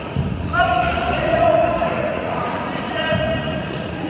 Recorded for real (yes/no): no